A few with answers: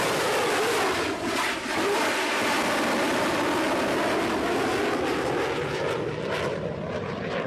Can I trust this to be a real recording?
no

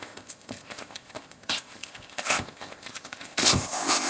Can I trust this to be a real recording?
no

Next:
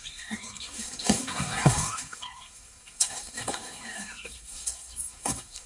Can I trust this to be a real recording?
no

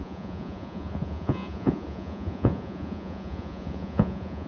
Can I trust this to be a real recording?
no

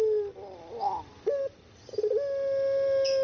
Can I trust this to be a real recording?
yes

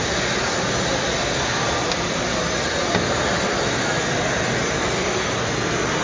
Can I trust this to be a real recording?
yes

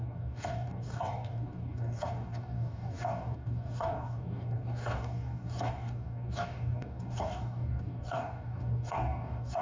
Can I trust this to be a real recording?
no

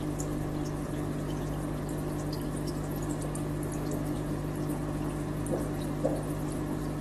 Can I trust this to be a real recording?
yes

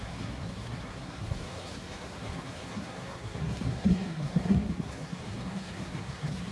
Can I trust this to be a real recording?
no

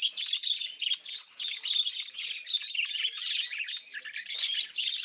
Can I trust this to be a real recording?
yes